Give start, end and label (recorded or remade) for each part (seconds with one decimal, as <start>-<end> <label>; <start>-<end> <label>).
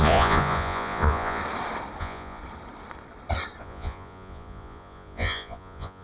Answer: 0.0-1.4 remade; 1.4-2.0 recorded; 2.0-2.4 remade; 2.4-3.6 recorded; 3.6-6.0 remade